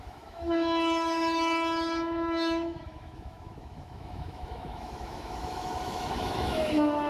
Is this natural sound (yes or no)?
no